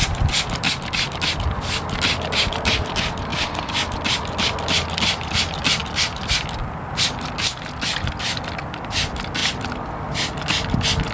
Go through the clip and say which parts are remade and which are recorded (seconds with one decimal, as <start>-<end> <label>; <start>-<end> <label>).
0.0-11.1 recorded